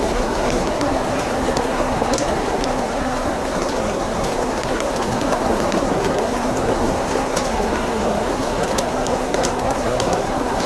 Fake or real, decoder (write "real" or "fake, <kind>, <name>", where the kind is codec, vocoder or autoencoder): fake, codec, SNAC